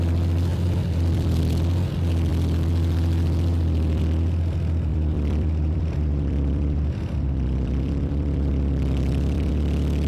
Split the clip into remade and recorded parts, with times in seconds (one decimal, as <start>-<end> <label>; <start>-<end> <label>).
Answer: 0.0-0.5 recorded; 0.5-1.4 remade; 1.4-2.3 recorded; 2.3-4.0 remade; 4.0-4.9 recorded; 4.9-9.5 remade; 9.5-10.1 recorded